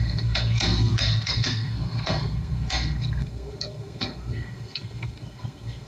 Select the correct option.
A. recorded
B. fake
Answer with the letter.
B